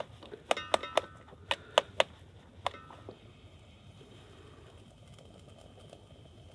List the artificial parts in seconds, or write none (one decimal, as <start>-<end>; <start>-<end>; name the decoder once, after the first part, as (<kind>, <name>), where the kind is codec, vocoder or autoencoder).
none